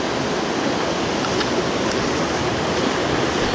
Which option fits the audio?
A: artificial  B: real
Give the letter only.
B